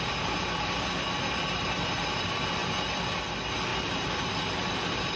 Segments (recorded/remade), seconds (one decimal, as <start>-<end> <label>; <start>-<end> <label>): 0.0-5.2 recorded